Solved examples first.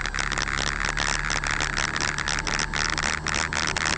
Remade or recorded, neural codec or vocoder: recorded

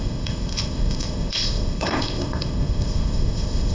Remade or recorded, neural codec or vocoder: remade, codec, ZipCodec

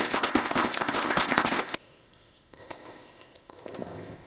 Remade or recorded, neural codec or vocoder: remade, codec, ZipCodec